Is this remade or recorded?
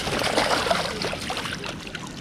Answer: recorded